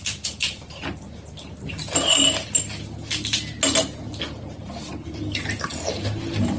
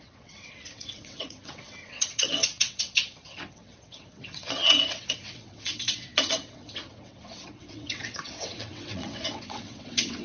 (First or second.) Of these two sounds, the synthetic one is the second